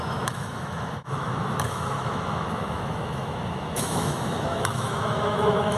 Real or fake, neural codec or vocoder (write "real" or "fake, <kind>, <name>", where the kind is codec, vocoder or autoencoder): fake, autoencoder, DAC-VAE